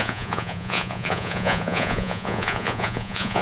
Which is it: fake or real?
fake